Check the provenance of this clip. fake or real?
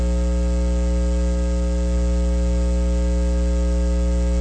real